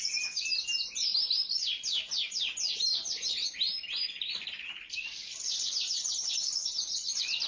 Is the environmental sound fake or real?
real